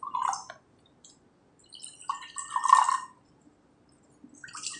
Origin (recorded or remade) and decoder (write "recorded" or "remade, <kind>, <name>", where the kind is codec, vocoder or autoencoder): recorded